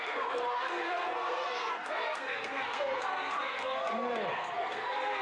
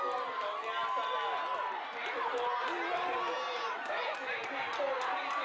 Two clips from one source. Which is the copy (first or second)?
first